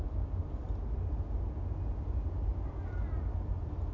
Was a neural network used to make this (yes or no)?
no